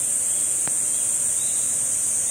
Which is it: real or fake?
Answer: real